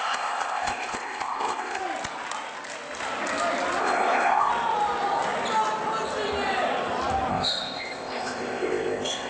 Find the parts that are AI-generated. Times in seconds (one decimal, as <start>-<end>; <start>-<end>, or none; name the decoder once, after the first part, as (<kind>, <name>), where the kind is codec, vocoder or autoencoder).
0.0-1.8 (codec, ZipCodec); 3.8-4.5; 7.3-9.3